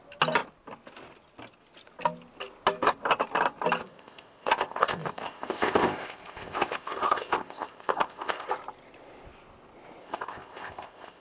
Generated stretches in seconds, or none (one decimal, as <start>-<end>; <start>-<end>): 3.8-8.5; 10.0-11.2